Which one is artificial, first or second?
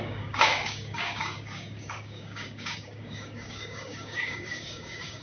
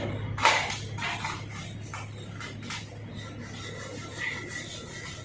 first